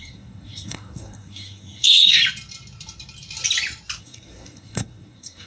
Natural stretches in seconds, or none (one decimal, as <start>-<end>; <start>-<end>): 2.2-4.0